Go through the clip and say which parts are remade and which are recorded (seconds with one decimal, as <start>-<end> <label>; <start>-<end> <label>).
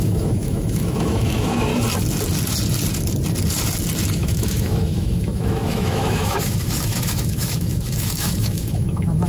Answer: 0.0-1.7 remade; 1.7-4.1 recorded; 4.1-9.3 remade